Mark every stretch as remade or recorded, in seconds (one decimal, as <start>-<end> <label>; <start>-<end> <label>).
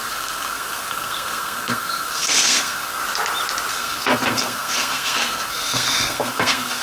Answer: 0.0-3.0 remade; 3.0-3.7 recorded; 3.7-6.8 remade